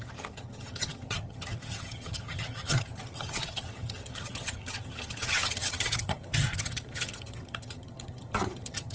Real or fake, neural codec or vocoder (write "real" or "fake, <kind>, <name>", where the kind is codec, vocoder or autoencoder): fake, vocoder, HiFi-GAN